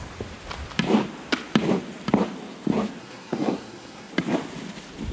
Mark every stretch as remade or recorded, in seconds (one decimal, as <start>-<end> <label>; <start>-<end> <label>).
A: 0.0-3.0 recorded; 3.0-4.1 remade; 4.1-5.1 recorded